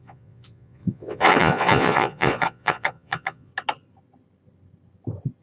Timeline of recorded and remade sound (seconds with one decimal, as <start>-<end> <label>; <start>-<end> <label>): 0.0-3.5 remade; 3.5-5.4 recorded